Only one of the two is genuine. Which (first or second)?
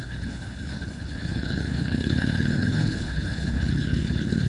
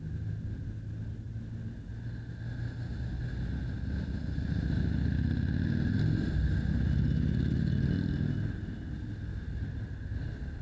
second